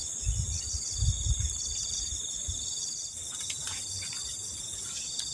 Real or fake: real